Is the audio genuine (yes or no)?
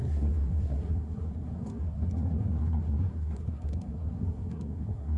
no